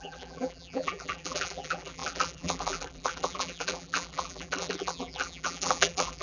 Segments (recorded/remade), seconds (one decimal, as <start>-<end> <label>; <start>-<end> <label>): 0.0-6.2 remade

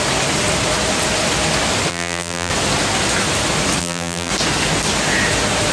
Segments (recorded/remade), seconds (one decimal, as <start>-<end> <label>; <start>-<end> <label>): 0.0-1.9 recorded; 1.9-2.5 remade; 2.5-3.8 recorded; 3.8-4.3 remade; 4.3-5.7 recorded

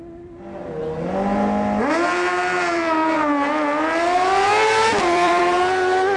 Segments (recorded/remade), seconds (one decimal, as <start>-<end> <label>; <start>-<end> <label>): 0.0-4.9 recorded; 4.9-5.4 remade; 5.4-6.2 recorded

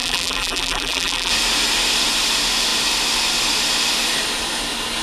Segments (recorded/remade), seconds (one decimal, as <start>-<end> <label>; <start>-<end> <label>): 0.0-1.3 remade; 1.3-5.0 recorded

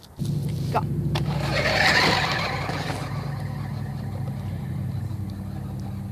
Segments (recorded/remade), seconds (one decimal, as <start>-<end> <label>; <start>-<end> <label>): 0.0-0.4 recorded; 0.4-2.6 remade; 2.6-6.1 recorded

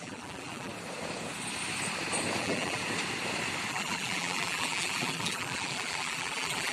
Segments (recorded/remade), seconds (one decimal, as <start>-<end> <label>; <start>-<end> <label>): 0.0-0.7 remade; 0.7-2.4 recorded; 2.4-2.8 remade; 2.8-3.7 recorded; 3.7-6.7 remade

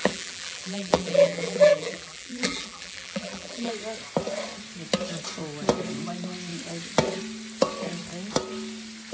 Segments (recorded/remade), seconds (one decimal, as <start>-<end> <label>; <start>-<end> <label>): 0.0-3.7 remade; 3.7-9.1 recorded

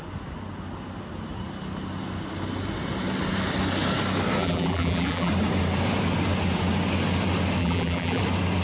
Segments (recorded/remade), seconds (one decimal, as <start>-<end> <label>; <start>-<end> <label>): 0.0-4.4 recorded; 4.4-5.3 remade; 5.3-7.6 recorded; 7.6-8.2 remade; 8.2-8.6 recorded